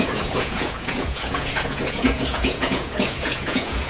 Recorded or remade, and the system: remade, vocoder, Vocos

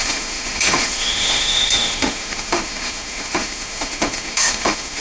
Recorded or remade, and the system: remade, autoencoder, DAC-VAE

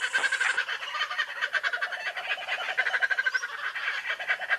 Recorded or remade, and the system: recorded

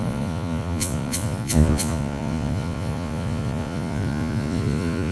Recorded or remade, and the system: remade, vocoder, Vocos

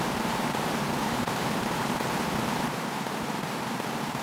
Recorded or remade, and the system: remade, vocoder, BigVGAN v2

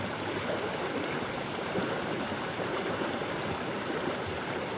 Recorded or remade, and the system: remade, vocoder, BigVGAN v2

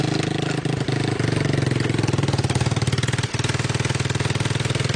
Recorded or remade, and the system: recorded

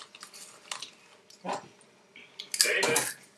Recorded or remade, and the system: recorded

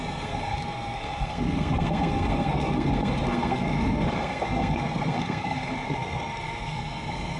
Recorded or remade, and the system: remade, codec, SNAC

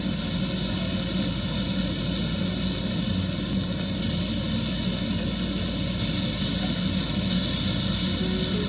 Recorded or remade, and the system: recorded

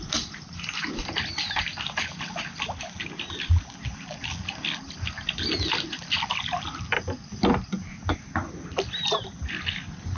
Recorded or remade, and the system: recorded